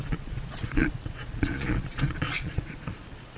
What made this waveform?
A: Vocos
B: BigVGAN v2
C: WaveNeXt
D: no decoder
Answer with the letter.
A